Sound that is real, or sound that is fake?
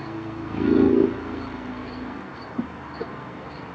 fake